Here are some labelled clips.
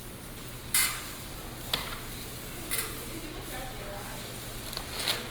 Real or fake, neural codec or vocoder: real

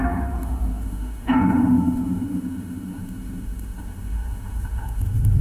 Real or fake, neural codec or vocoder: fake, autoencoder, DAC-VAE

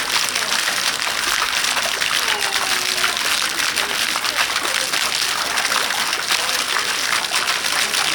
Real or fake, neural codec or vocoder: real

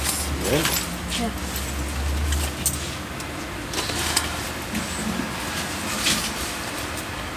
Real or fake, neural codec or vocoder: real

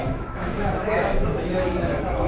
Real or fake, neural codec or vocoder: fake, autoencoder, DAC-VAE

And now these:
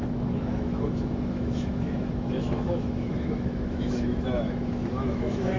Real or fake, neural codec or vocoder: fake, autoencoder, DAC-VAE